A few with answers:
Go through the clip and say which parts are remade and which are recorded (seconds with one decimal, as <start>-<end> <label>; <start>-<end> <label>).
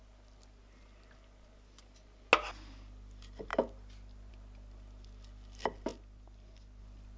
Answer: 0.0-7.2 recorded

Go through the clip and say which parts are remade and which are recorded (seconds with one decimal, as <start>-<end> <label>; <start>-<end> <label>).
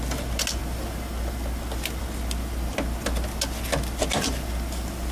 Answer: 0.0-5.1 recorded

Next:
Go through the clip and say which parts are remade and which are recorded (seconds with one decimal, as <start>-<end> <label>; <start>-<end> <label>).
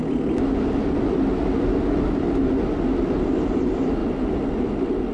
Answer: 0.0-5.1 recorded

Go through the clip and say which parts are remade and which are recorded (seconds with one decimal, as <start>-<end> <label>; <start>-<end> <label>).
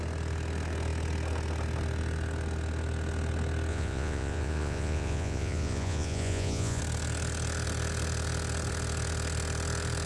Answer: 0.0-3.7 recorded; 3.7-6.8 remade; 6.8-10.1 recorded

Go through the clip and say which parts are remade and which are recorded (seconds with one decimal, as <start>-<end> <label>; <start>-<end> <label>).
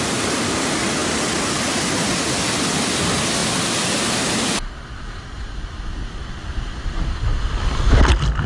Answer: 0.0-3.4 recorded; 3.4-7.4 remade; 7.4-8.5 recorded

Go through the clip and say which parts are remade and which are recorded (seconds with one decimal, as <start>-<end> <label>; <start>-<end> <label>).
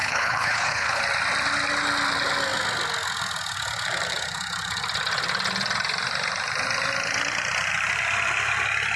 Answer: 0.0-1.0 remade; 1.0-9.0 recorded